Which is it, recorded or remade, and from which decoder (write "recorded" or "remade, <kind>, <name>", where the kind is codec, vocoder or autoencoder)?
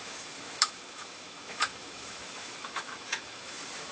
remade, autoencoder, DAC-VAE